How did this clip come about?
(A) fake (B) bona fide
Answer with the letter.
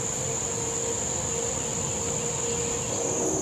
B